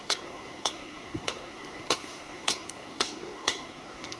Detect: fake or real fake